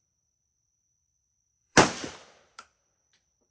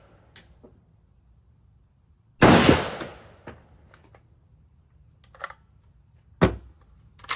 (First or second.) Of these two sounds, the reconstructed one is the first